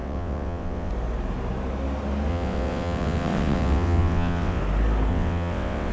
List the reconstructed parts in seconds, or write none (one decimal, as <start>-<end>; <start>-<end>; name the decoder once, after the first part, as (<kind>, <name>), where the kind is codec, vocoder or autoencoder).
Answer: 0.0-0.9 (vocoder, WaveNeXt); 2.3-4.6; 5.1-5.9